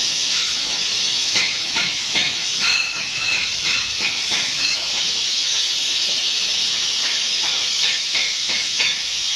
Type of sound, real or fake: fake